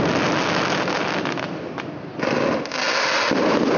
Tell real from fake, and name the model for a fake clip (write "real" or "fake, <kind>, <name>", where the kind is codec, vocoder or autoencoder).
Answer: real